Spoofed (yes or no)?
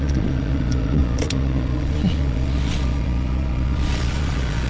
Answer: yes